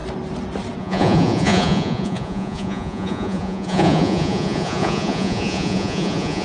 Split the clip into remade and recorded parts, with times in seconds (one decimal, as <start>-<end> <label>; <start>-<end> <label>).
0.0-0.8 recorded; 0.8-6.4 remade